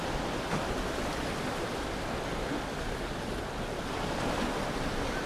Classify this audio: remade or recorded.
recorded